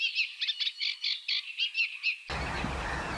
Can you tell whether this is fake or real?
real